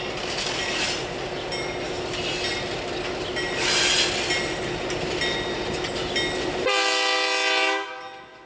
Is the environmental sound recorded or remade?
recorded